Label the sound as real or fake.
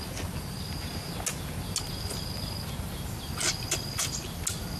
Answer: real